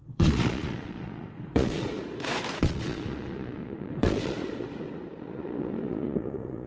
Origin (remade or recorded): remade